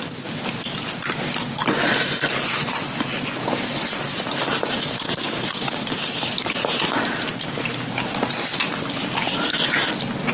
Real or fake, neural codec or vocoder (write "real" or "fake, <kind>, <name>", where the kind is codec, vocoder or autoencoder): real